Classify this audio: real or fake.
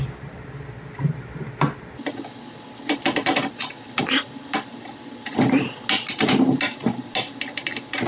real